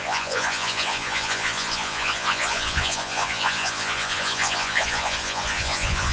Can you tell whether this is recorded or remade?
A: remade